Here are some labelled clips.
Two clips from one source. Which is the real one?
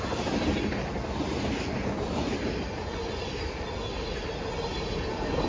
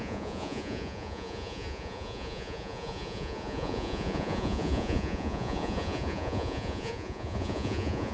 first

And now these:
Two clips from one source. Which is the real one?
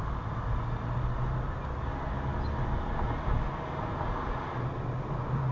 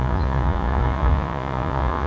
first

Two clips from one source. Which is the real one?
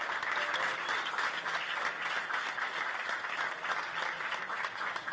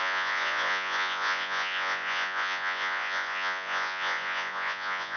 first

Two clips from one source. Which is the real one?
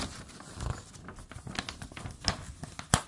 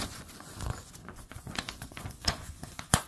first